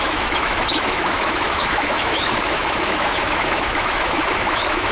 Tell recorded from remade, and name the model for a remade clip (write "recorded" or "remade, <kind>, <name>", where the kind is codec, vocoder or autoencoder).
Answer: remade, autoencoder, DAC-VAE